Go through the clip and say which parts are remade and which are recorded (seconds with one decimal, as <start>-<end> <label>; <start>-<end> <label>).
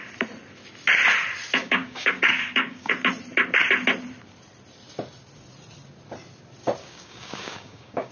0.0-1.6 recorded; 1.6-2.9 remade; 2.9-6.8 recorded; 6.8-8.1 remade